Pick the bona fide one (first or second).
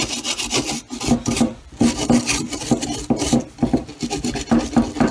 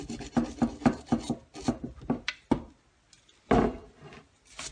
second